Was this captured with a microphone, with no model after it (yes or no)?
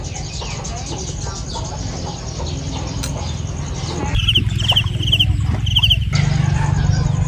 yes